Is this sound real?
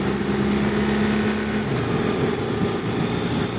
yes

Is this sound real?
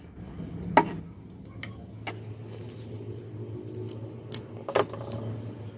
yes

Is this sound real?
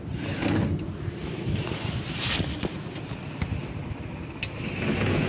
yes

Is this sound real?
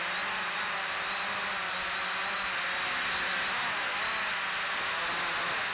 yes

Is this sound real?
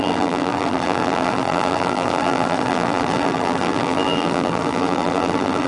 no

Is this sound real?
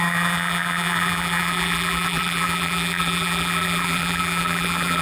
no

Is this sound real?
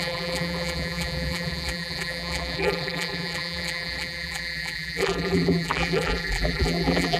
no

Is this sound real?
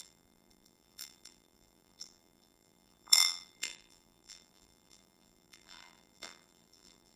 no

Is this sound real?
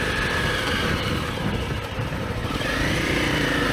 no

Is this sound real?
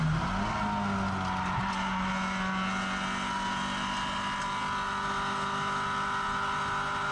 yes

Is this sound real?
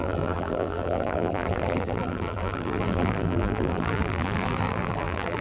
no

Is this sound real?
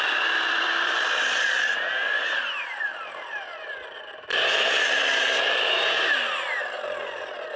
no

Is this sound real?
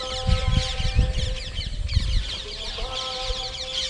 yes